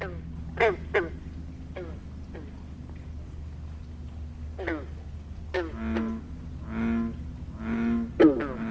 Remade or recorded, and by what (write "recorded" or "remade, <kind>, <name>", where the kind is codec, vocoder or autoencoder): recorded